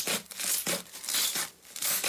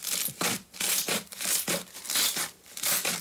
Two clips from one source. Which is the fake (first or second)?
second